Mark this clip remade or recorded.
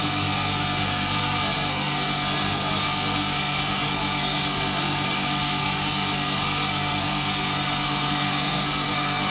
remade